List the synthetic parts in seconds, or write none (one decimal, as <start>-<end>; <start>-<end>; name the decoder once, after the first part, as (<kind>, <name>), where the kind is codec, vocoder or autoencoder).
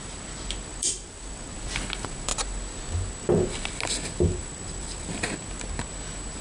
0.7-1.5 (vocoder, BigVGAN v2); 4.4-5.3